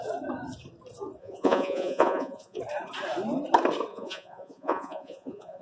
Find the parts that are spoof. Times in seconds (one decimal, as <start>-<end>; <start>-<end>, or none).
1.2-2.6; 3.9-5.6